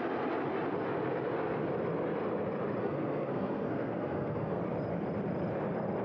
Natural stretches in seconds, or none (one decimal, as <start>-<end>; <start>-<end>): 0.0-2.8; 4.6-6.0

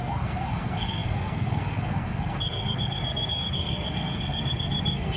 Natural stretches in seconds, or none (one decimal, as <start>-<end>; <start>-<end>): none

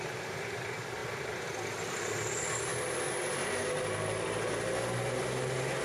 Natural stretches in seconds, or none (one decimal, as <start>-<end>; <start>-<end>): 0.0-5.8

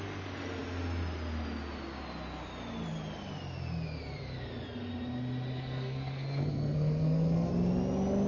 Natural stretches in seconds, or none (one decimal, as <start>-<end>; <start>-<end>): 0.0-5.5; 7.5-8.3

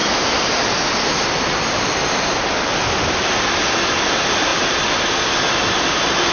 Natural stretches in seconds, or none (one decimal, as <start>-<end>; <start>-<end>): 0.0-6.3

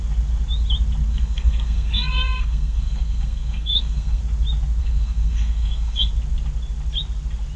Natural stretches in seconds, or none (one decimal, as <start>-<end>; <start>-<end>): 0.0-1.1; 4.2-4.8; 6.1-7.6

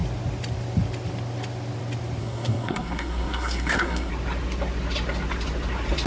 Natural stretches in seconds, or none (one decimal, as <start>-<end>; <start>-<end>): 0.0-2.2; 4.1-6.1